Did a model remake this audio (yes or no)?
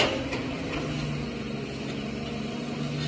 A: no